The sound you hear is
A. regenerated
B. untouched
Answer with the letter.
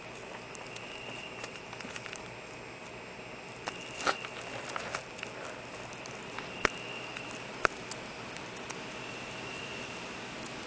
B